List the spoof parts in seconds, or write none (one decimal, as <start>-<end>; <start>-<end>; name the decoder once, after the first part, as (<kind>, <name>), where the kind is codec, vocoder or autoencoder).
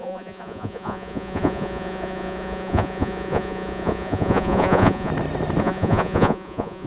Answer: 0.0-5.1 (vocoder, Vocos); 5.6-6.9